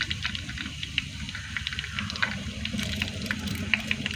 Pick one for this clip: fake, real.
fake